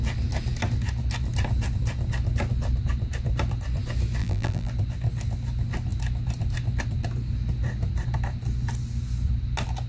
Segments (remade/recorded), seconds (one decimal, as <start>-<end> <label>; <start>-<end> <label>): 0.0-4.2 recorded; 4.2-4.7 remade; 4.7-9.9 recorded